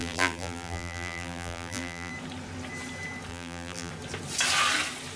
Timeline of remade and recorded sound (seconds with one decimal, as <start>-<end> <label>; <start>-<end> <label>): 0.0-2.1 remade; 2.1-3.3 recorded; 3.3-3.9 remade; 3.9-5.2 recorded